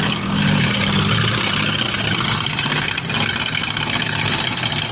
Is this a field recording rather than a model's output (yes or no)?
yes